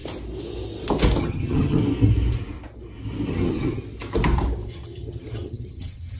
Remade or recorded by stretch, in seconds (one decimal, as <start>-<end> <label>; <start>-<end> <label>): 0.0-1.2 recorded; 1.2-1.8 remade; 1.8-3.3 recorded; 3.3-3.8 remade; 3.8-4.7 recorded; 4.7-6.2 remade